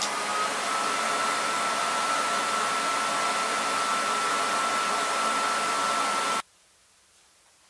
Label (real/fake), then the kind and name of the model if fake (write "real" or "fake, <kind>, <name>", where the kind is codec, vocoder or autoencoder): real